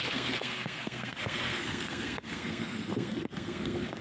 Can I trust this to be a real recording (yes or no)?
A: no